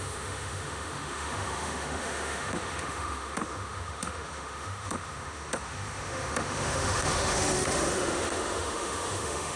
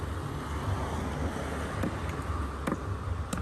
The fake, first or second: first